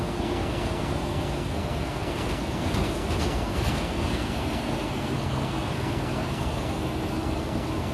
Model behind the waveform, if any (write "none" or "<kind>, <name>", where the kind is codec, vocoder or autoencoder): codec, SNAC